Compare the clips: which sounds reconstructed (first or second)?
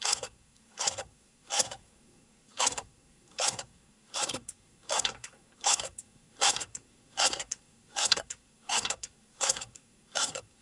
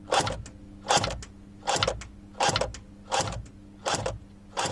first